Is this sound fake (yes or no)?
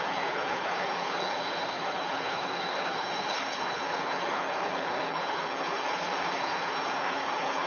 yes